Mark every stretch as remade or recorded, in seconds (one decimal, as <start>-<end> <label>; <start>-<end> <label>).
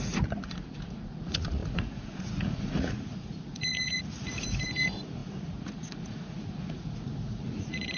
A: 0.0-8.0 remade